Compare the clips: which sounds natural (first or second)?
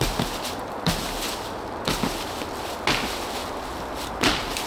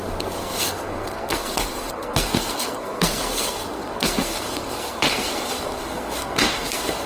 first